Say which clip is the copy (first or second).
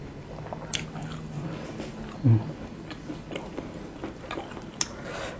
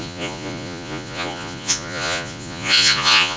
second